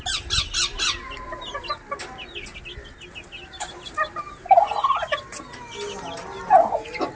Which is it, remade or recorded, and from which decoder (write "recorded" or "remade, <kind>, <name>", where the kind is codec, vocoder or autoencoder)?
recorded